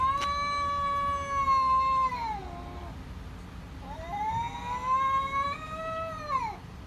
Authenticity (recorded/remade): recorded